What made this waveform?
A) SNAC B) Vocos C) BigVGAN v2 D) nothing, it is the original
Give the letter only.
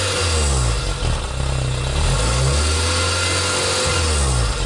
D